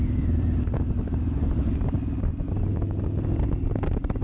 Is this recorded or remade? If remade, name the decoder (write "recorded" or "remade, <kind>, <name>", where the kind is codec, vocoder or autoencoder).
recorded